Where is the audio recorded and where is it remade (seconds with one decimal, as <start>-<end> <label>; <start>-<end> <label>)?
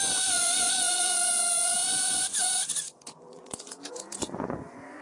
0.0-5.0 remade